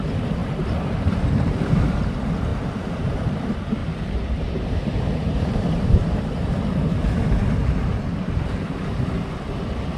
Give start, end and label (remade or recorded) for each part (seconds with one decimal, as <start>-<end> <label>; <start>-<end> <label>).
0.0-2.5 recorded; 2.5-3.1 remade; 3.1-3.8 recorded; 3.8-6.5 remade; 6.5-7.8 recorded; 7.8-9.2 remade; 9.2-10.0 recorded